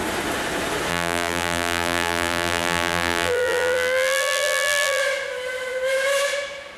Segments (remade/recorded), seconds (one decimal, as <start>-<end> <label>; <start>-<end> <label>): 0.0-0.9 recorded; 0.9-5.0 remade; 5.0-6.8 recorded